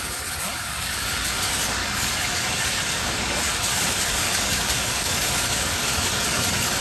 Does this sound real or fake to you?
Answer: fake